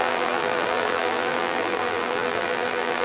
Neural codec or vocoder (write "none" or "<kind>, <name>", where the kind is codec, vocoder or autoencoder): vocoder, BigVGAN v2